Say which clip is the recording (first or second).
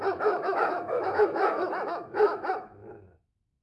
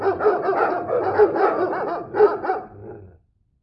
second